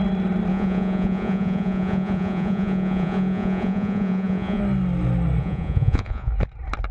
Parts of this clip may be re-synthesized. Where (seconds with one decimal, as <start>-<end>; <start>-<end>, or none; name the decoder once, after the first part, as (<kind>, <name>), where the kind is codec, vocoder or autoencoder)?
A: 0.5-4.6 (vocoder, Vocos); 5.4-6.3